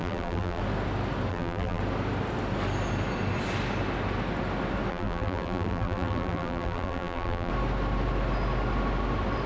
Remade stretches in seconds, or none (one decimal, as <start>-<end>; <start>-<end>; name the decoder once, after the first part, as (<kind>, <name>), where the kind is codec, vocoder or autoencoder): 0.0-0.6 (vocoder, BigVGAN v2); 1.3-1.8; 4.9-7.5